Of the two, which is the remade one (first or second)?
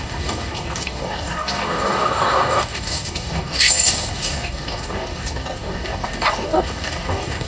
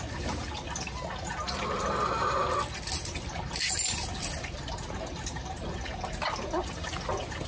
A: first